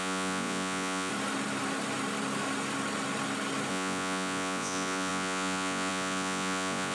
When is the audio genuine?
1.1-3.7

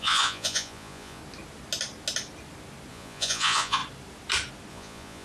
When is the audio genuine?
1.2-2.9; 3.8-4.7